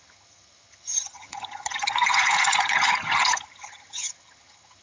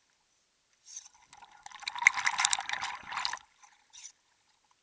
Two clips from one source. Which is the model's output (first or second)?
first